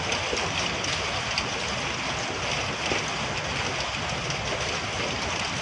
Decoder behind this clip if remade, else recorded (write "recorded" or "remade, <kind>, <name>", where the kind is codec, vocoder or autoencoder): recorded